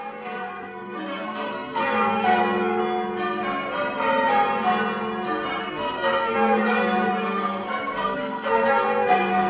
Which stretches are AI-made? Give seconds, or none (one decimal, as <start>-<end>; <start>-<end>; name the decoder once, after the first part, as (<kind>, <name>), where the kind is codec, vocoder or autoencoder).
0.0-2.8 (codec, SNAC); 5.6-9.5

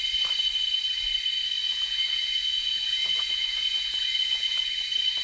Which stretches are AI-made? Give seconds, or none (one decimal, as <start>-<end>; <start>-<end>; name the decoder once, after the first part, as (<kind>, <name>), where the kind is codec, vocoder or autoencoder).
1.6-4.7 (vocoder, Vocos)

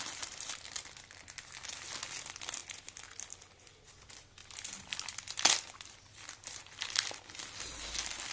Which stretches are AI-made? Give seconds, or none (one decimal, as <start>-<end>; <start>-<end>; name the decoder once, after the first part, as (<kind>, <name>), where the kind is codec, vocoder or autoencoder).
none

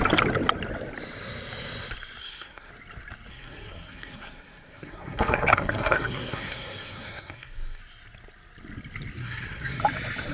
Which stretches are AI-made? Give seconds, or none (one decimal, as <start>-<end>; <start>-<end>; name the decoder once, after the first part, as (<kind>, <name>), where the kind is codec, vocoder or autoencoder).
2.2-2.7 (codec, SNAC); 3.3-7.8; 9.2-9.8

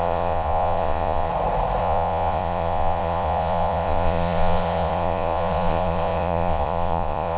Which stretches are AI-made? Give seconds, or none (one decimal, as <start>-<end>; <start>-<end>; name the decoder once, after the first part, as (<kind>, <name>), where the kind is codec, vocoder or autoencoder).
0.0-1.3 (vocoder, Vocos); 1.8-7.4